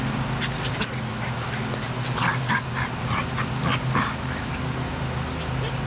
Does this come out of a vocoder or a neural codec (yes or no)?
no